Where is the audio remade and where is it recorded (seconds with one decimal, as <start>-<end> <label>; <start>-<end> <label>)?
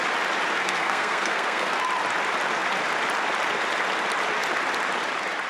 0.0-0.6 recorded; 0.6-1.8 remade; 1.8-5.5 recorded